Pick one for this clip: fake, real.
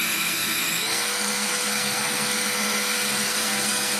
fake